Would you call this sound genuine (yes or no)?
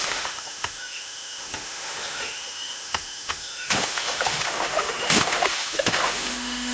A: no